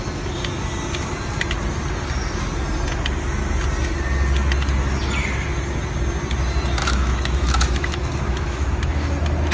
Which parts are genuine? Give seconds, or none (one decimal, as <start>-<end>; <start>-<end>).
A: 0.0-6.8; 9.1-9.5